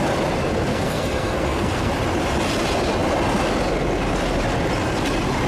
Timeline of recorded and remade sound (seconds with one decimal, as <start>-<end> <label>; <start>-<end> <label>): 0.0-0.7 recorded; 0.7-1.9 remade; 1.9-5.5 recorded